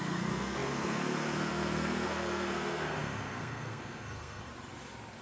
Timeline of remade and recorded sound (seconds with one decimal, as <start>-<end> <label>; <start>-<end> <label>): 0.0-4.5 remade; 4.5-5.2 recorded